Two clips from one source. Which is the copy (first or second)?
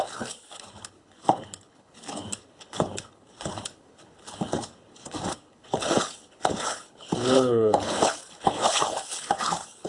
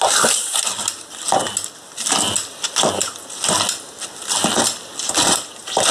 first